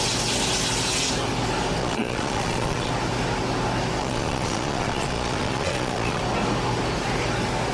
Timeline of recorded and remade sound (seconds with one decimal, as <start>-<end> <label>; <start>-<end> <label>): 0.0-1.8 recorded; 1.8-2.9 remade; 2.9-4.0 recorded; 4.0-6.2 remade; 6.2-7.7 recorded